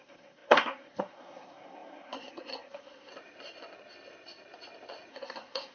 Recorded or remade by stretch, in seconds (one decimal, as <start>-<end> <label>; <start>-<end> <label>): 0.0-3.1 remade; 3.1-5.1 recorded; 5.1-5.7 remade